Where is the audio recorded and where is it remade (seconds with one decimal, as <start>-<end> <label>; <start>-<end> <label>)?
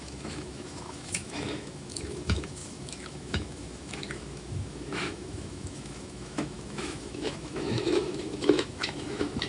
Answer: 0.0-9.5 remade